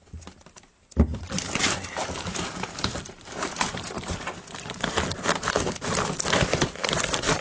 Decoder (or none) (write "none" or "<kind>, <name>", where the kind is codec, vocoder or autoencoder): vocoder, BigVGAN v2